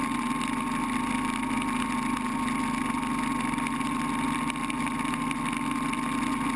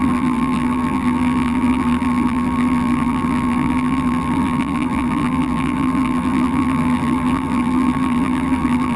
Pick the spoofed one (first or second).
second